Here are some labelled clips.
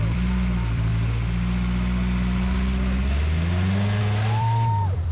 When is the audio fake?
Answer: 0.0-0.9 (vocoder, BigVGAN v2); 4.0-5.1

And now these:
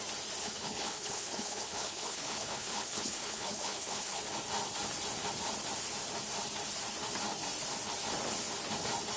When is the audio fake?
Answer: 0.4-4.2 (codec, HILCodec)

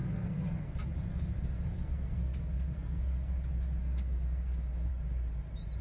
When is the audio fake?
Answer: 0.0-0.7 (codec, SNAC); 1.1-3.3; 3.8-4.9

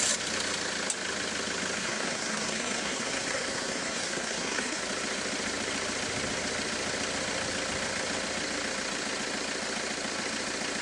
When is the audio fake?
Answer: 1.8-4.8 (codec, SNAC)

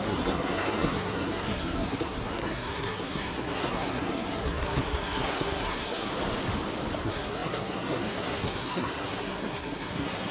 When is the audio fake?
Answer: 0.0-6.1 (codec, SNAC); 7.0-10.3

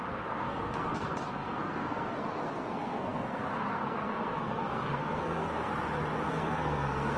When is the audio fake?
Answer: 0.0-5.7 (codec, SNAC); 6.3-7.2

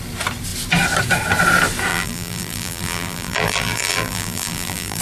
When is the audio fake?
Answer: 1.9-5.0 (vocoder, BigVGAN v2)

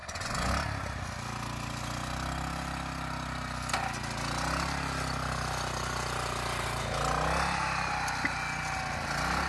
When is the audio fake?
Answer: 0.0-0.5 (vocoder, Vocos)